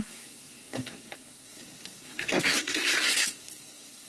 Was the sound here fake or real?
fake